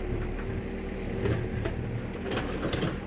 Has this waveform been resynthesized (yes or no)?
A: no